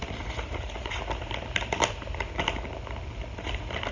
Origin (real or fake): real